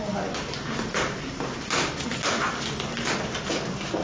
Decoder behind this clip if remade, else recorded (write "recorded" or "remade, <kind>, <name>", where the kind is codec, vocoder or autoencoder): recorded